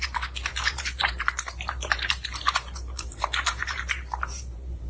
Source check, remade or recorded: remade